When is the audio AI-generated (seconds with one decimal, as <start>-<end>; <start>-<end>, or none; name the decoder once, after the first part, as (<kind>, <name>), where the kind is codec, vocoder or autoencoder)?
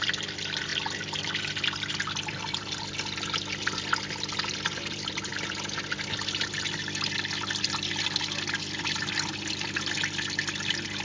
none